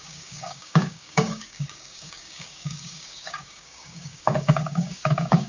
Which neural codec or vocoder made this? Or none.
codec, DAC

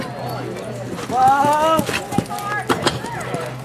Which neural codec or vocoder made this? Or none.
none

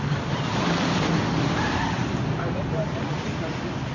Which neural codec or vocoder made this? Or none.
none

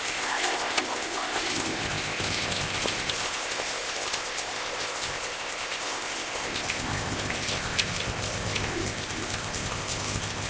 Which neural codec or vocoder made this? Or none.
codec, ZipCodec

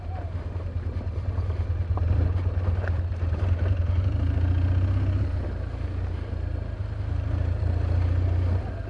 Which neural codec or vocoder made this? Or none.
none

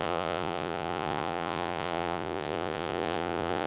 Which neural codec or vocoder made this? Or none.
vocoder, Vocos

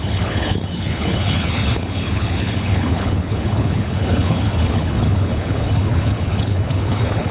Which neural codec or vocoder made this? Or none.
codec, HILCodec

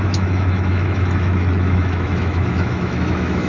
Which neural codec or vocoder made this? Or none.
autoencoder, DAC-VAE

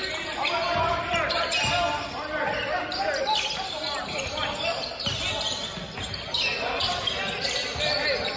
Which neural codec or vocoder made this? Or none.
none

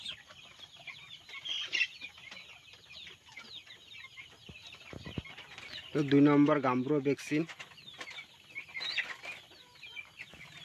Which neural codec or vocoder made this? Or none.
none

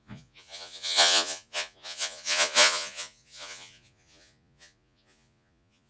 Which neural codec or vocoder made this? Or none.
vocoder, Vocos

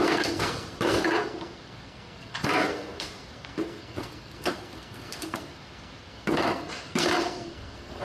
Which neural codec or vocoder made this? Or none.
codec, SNAC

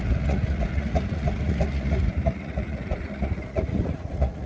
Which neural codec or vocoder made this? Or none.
vocoder, Vocos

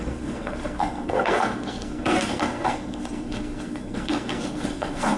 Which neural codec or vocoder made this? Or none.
codec, SNAC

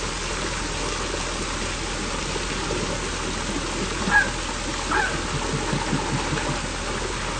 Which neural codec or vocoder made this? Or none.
none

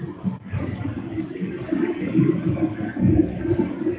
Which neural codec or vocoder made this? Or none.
codec, DAC